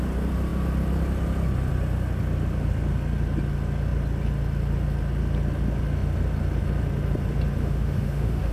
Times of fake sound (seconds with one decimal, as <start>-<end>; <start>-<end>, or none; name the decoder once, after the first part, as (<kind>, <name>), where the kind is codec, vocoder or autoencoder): 7.6-8.5 (autoencoder, DAC-VAE)